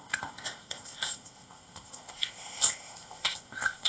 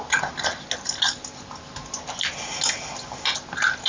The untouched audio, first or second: second